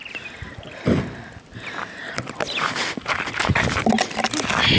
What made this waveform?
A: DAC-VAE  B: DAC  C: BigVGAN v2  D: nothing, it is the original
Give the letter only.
D